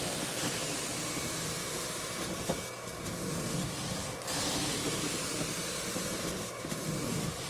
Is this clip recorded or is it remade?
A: recorded